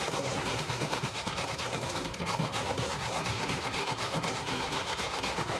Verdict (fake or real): fake